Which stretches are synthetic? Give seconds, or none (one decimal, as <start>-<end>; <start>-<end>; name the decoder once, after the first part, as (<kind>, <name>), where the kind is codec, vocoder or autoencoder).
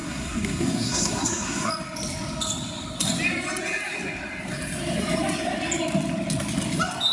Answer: 0.0-1.7 (codec, SNAC)